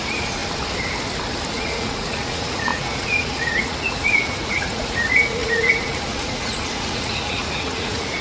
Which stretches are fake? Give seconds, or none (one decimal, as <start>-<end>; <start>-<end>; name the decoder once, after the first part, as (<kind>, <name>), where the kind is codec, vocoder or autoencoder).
0.0-0.4 (vocoder, Vocos); 1.5-8.2